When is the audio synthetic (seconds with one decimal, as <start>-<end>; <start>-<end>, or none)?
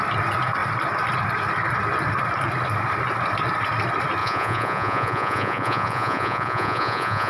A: 4.2-7.3